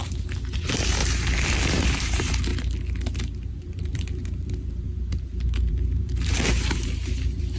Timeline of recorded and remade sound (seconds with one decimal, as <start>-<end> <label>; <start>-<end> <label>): 0.0-1.0 remade; 1.0-2.0 recorded; 2.0-2.5 remade; 2.5-3.5 recorded; 3.5-7.6 remade

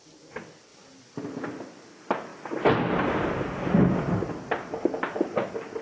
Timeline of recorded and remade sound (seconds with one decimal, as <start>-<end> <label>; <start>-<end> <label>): 0.0-0.7 recorded; 0.7-1.2 remade; 1.2-5.8 recorded

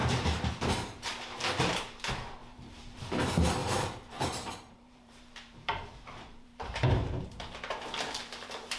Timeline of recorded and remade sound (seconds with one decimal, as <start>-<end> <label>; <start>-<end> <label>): 0.0-0.5 remade; 0.5-2.4 recorded; 2.4-3.0 remade; 3.0-3.6 recorded; 3.6-8.8 remade

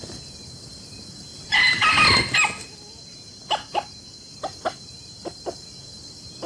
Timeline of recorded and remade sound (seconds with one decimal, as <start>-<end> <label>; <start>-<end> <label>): 0.0-1.3 recorded; 1.3-1.9 remade; 1.9-6.5 recorded

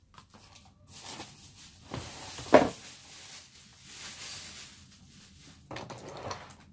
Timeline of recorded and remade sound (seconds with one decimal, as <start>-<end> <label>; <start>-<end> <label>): 0.0-2.7 remade; 2.7-6.7 recorded

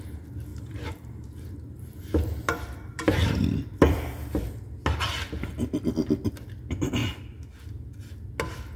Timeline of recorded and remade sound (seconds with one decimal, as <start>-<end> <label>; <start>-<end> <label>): 0.0-0.5 recorded; 0.5-3.4 remade; 3.4-8.8 recorded